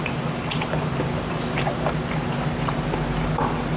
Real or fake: real